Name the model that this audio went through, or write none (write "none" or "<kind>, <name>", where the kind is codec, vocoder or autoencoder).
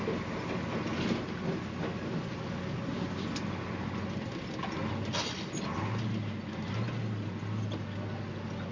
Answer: none